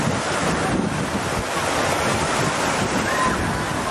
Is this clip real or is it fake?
real